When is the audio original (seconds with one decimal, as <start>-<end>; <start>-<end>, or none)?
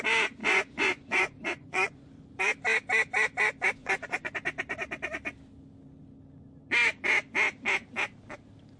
0.0-0.4; 2.1-3.8; 4.3-8.8